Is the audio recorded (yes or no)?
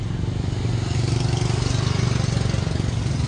yes